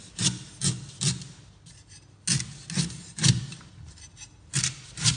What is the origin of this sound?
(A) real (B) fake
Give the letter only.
A